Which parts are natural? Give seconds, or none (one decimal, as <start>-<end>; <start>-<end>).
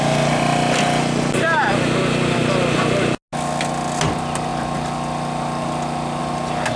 0.0-6.8